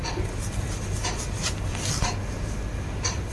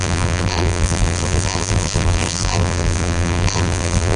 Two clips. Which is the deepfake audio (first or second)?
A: second